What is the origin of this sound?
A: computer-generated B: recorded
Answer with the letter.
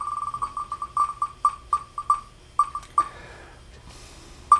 B